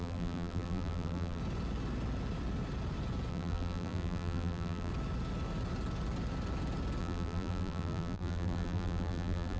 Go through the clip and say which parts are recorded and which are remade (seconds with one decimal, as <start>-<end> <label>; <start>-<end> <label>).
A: 0.0-1.4 remade; 1.4-3.3 recorded; 3.3-4.9 remade; 4.9-7.0 recorded; 7.0-9.6 remade

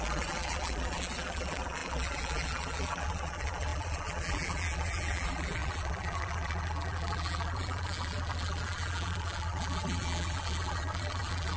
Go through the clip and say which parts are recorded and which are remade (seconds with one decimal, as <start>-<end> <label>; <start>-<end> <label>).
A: 0.0-11.6 remade

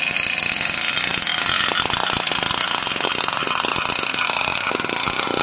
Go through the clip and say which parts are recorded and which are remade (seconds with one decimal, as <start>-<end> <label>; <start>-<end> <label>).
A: 0.0-5.4 recorded

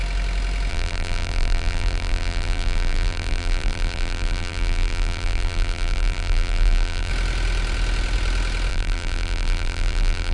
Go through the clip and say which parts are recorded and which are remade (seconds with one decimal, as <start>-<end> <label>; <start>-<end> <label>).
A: 0.0-0.7 recorded; 0.7-7.1 remade; 7.1-8.7 recorded; 8.7-10.3 remade

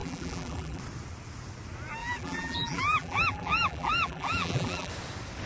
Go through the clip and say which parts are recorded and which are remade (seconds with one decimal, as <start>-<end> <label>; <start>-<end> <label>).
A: 0.0-0.8 remade; 0.8-2.0 recorded; 2.0-4.9 remade; 4.9-5.5 recorded